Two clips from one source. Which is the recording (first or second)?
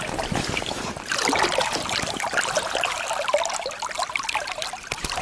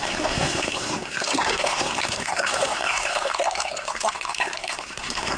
first